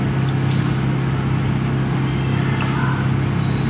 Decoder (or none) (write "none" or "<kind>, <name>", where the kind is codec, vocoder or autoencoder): none